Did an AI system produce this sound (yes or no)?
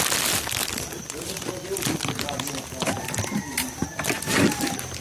yes